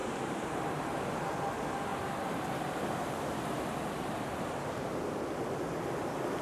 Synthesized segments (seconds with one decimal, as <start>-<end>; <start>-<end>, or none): 0.0-0.6; 1.9-5.2